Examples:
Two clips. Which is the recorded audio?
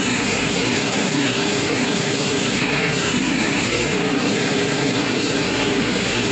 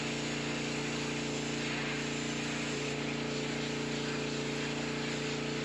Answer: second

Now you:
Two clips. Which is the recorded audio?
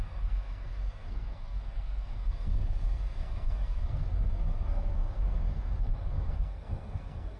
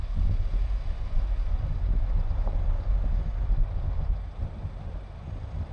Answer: second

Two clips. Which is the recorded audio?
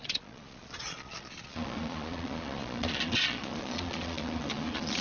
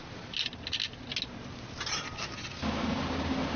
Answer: second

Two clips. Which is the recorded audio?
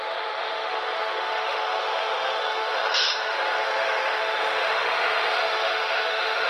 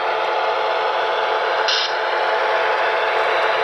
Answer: second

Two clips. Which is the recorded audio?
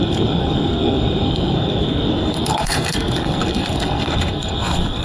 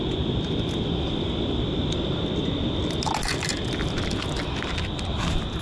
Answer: second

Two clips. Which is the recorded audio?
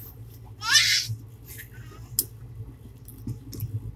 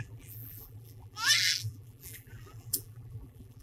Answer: first